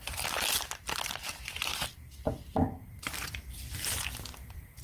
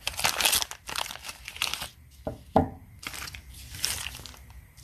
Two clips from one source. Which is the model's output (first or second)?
first